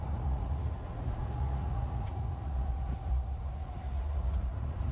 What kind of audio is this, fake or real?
fake